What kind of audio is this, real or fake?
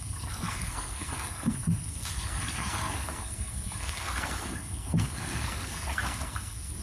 fake